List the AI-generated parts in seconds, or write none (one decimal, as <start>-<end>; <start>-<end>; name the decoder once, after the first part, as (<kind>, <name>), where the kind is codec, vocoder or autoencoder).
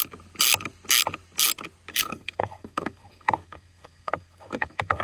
1.9-5.0 (codec, SNAC)